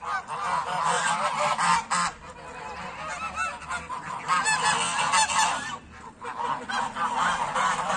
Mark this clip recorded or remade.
recorded